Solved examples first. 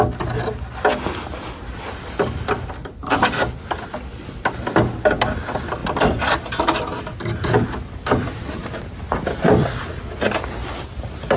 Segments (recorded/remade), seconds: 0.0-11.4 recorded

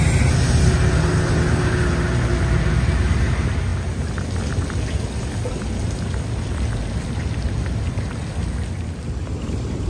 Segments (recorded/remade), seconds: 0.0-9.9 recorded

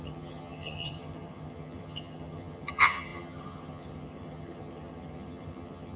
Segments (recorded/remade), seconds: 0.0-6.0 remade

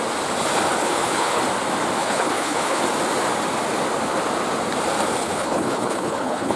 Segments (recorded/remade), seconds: 0.0-0.8 recorded; 0.8-1.4 remade; 1.4-2.0 recorded; 2.0-2.8 remade; 2.8-5.2 recorded; 5.2-6.6 remade